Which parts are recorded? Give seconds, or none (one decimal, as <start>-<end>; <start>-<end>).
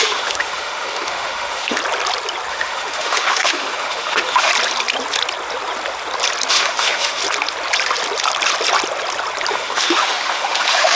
1.8-2.5; 4.5-6.5; 7.2-9.5